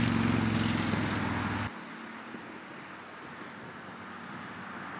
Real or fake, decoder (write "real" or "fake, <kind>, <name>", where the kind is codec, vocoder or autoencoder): real